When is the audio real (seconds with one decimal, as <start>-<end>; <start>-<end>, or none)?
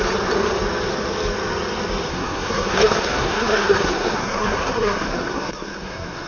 0.0-2.1